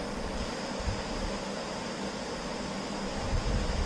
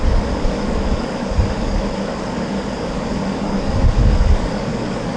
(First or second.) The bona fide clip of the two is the first